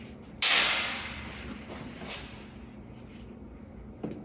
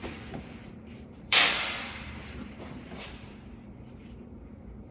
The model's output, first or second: second